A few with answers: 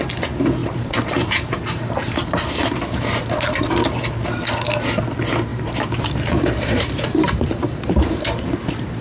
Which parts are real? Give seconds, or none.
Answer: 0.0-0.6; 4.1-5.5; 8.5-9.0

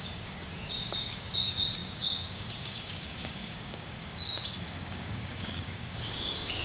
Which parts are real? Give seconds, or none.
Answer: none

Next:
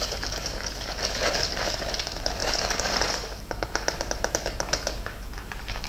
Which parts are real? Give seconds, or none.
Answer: none

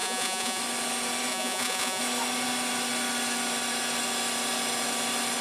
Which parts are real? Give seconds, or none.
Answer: 0.6-1.3; 2.0-5.4

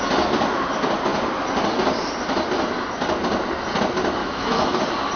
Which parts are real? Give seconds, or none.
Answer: 0.0-4.2; 4.8-5.2

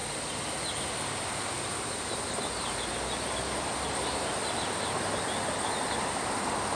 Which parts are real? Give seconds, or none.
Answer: 0.0-6.8